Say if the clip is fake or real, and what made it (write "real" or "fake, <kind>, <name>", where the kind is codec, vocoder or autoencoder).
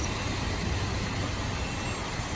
real